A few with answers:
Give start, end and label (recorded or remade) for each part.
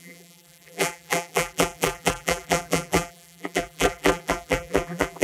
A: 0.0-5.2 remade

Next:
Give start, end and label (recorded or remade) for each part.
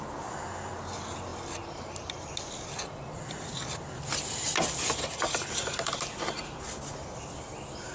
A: 0.0-7.9 recorded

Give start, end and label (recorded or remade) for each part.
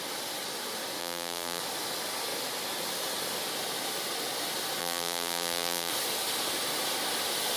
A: 0.0-1.0 recorded; 1.0-1.6 remade; 1.6-4.8 recorded; 4.8-5.9 remade; 5.9-7.6 recorded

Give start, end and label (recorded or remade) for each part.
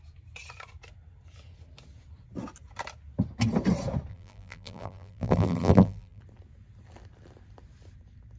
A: 0.0-4.1 recorded; 4.1-6.2 remade; 6.2-8.4 recorded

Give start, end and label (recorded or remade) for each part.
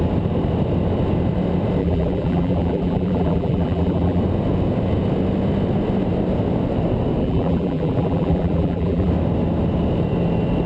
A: 0.0-1.8 recorded; 1.8-4.2 remade; 4.2-7.2 recorded; 7.2-9.1 remade; 9.1-10.7 recorded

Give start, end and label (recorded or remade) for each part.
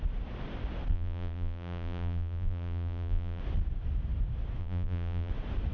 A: 0.0-0.9 recorded; 0.9-3.4 remade; 3.4-4.6 recorded; 4.6-5.3 remade; 5.3-5.7 recorded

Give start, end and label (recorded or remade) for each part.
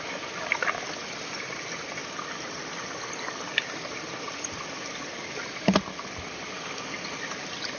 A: 0.0-7.8 recorded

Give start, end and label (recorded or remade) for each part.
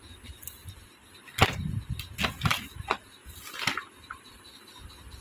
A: 0.0-5.2 recorded